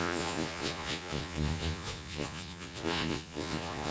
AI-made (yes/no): yes